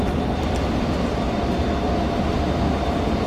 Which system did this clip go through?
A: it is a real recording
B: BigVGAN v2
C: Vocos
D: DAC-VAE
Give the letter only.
A